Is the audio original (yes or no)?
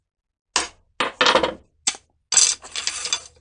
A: yes